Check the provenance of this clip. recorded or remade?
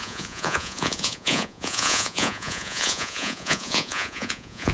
remade